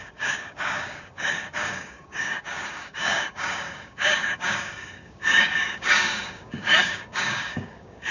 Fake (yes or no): yes